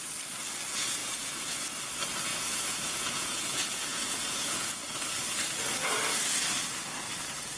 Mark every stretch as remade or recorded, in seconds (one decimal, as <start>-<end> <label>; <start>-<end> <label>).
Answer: 0.0-1.0 recorded; 1.0-1.6 remade; 1.6-2.3 recorded; 2.3-4.8 remade; 4.8-7.6 recorded